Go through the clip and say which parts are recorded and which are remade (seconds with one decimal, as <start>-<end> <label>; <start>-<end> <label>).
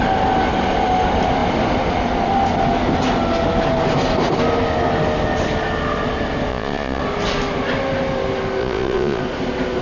0.0-6.5 recorded; 6.5-7.0 remade; 7.0-8.6 recorded; 8.6-9.2 remade; 9.2-9.8 recorded